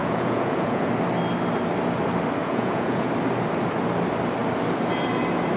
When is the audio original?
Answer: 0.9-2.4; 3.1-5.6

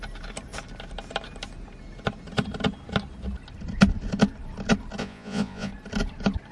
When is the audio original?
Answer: 0.0-5.0; 5.7-6.5

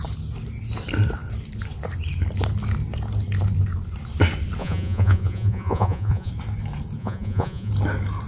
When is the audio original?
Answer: 0.0-4.6; 6.3-7.0; 7.7-8.3

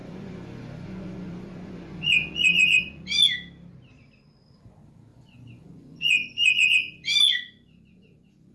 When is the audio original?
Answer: 3.2-5.1

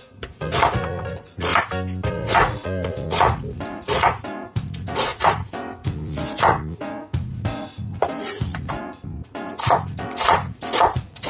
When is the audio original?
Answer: 1.5-2.1

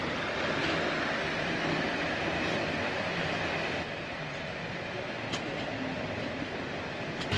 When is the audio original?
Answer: 0.0-7.4

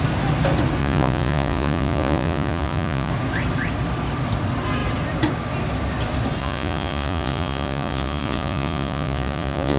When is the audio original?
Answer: 0.0-0.8; 3.1-6.4

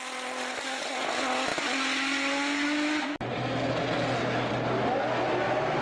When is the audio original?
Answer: 0.0-5.8